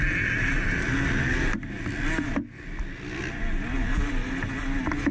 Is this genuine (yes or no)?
yes